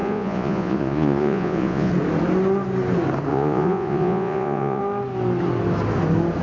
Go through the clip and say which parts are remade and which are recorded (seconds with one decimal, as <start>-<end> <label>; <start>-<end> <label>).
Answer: 0.0-1.9 remade; 1.9-3.3 recorded; 3.3-4.8 remade; 4.8-6.4 recorded